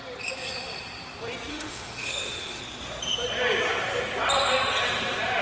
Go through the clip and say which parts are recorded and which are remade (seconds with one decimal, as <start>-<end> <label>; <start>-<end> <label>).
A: 0.0-1.5 recorded; 1.5-2.6 remade; 2.6-5.4 recorded